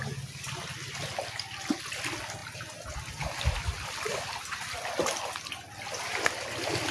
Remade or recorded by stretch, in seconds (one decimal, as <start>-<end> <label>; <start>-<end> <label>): 0.0-6.9 recorded